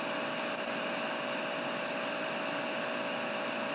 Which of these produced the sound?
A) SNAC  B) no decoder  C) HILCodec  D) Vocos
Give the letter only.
B